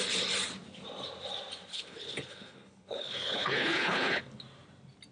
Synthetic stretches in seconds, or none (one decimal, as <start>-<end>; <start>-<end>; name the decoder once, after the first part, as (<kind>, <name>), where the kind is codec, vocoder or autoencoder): 1.7-4.2 (codec, HILCodec)